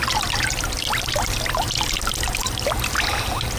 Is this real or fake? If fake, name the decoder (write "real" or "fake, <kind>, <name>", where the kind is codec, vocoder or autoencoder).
real